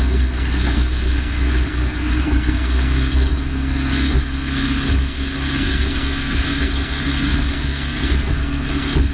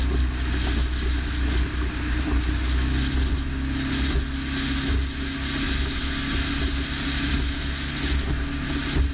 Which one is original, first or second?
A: second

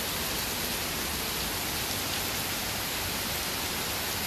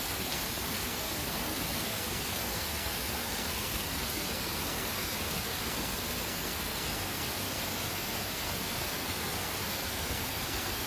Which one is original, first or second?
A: first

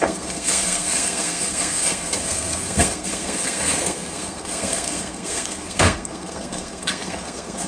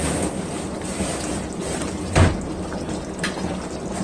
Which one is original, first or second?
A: second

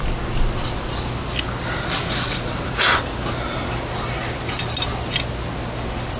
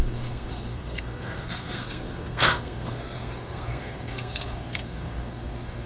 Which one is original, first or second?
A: first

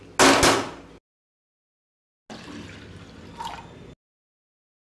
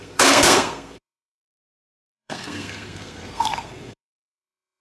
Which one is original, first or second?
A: first